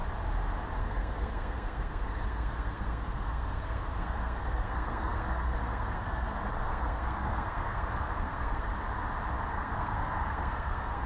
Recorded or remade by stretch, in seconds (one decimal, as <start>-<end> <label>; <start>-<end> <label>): 0.0-0.8 recorded; 0.8-8.7 remade; 8.7-9.5 recorded; 9.5-11.1 remade